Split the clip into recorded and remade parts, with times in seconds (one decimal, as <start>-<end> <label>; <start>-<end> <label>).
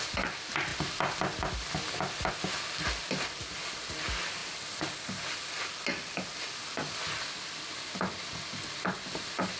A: 0.0-9.6 recorded